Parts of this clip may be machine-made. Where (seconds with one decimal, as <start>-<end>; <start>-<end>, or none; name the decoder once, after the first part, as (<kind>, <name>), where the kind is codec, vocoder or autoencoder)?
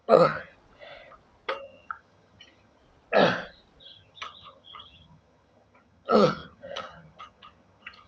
0.0-0.5 (vocoder, HiFi-GAN); 1.6-2.8; 3.8-8.1